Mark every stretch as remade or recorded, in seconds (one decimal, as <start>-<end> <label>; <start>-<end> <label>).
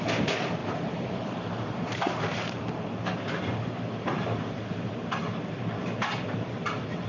0.0-0.6 recorded; 0.6-4.9 remade; 4.9-7.1 recorded